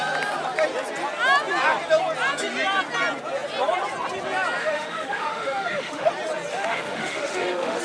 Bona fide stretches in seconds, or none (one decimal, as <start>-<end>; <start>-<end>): 0.0-4.6; 6.1-6.5

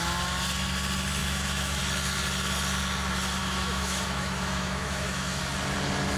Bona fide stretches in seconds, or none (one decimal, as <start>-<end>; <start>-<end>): 0.0-1.2; 1.8-3.4; 5.4-6.2